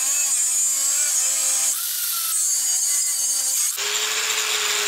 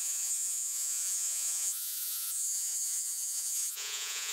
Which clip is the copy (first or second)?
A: second